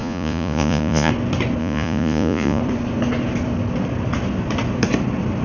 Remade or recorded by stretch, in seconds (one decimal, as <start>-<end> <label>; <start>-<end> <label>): 0.0-1.1 remade; 1.1-1.6 recorded; 1.6-2.6 remade; 2.6-5.4 recorded